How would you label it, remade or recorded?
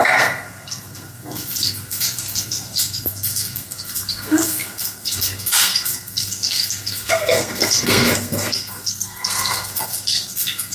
remade